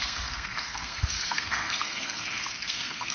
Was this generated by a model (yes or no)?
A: yes